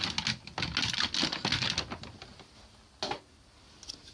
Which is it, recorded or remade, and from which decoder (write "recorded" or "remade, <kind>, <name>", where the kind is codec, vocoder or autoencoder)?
recorded